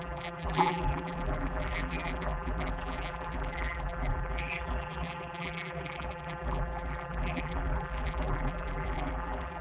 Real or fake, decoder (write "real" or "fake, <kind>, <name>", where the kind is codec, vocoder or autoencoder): fake, vocoder, BigVGAN v2